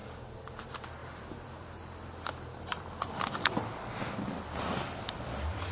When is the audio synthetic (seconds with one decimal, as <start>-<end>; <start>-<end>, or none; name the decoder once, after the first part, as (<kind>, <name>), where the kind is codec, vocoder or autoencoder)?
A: 0.0-5.7 (vocoder, BigVGAN v2)